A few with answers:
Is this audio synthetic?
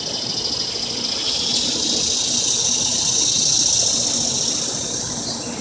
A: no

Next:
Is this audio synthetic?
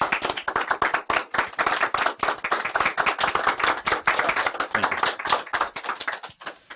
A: no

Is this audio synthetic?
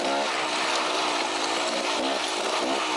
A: no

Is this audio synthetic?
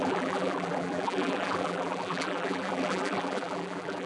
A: yes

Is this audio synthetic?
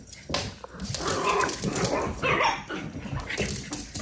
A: no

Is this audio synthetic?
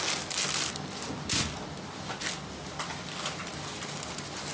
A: no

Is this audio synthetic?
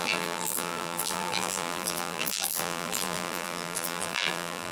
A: yes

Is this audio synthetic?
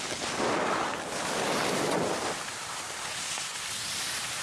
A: no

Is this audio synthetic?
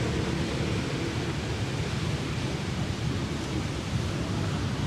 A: yes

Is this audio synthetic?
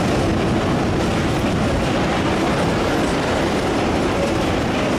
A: no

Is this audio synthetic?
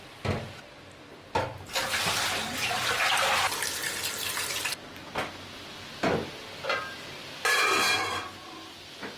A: no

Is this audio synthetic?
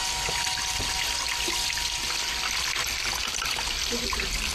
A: yes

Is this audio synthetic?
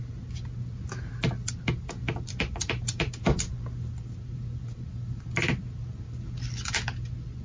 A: no